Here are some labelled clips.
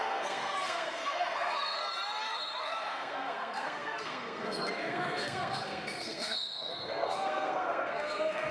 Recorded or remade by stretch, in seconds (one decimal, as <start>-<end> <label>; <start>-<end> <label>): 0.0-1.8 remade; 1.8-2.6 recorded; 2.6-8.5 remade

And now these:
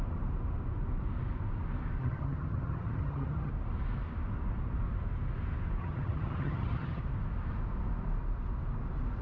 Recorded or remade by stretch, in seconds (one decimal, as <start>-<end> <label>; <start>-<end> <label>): 0.0-2.0 recorded; 2.0-3.5 remade; 3.5-5.8 recorded; 5.8-7.0 remade; 7.0-9.2 recorded

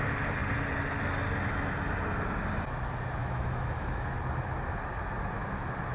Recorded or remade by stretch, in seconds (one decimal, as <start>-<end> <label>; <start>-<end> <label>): 0.0-3.2 recorded; 3.2-4.1 remade; 4.1-5.9 recorded